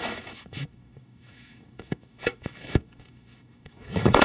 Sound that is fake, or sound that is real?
fake